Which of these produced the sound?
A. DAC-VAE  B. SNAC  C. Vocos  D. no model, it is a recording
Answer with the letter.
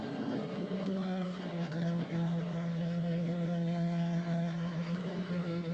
B